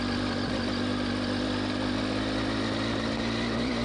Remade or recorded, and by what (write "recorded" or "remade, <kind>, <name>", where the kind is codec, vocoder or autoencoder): recorded